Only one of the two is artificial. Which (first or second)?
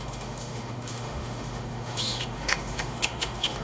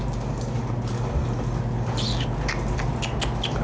first